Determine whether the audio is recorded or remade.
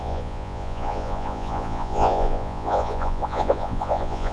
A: remade